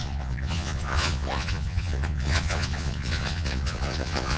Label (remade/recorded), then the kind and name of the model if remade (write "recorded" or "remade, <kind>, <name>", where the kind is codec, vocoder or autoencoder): remade, vocoder, Vocos